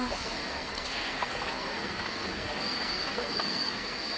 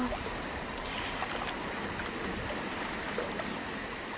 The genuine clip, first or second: second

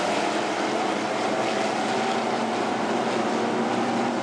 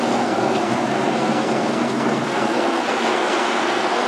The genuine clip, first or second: first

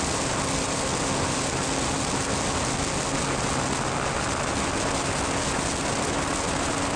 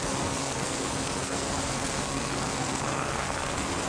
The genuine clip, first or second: first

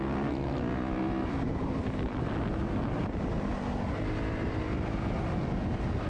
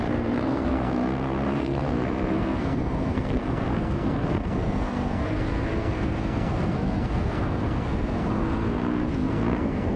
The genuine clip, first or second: first